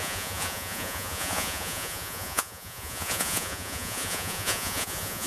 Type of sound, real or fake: fake